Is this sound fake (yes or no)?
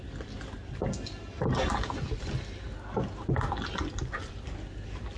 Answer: no